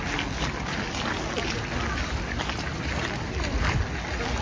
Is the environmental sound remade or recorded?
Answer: recorded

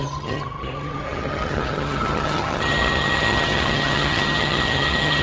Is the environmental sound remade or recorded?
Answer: remade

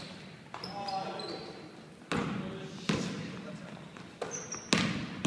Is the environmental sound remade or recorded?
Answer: recorded